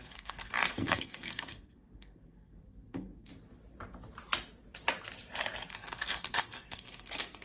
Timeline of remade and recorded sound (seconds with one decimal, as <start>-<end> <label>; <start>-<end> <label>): 0.0-3.3 remade; 3.3-5.7 recorded; 5.7-7.4 remade